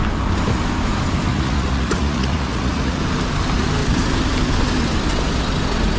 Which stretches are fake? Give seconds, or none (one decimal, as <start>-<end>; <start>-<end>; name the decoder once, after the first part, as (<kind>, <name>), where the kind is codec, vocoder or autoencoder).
1.3-3.0 (vocoder, Vocos)